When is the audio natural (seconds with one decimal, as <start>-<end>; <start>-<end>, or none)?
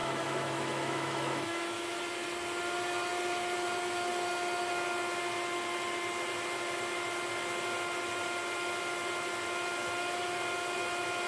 2.0-11.3